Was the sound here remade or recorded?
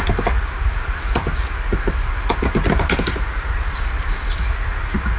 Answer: recorded